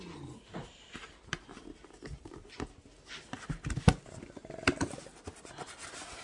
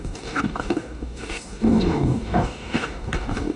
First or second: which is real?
first